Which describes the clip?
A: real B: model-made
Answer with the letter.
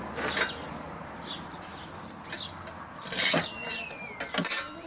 A